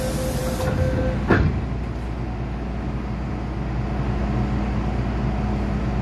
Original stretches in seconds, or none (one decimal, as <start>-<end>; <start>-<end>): 0.0-6.0